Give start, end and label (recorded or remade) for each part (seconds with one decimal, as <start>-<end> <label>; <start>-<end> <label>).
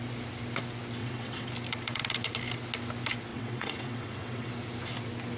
0.0-1.0 recorded; 1.0-1.5 remade; 1.5-3.3 recorded; 3.3-4.5 remade; 4.5-5.4 recorded